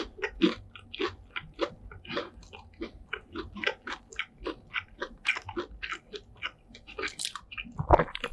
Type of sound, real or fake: real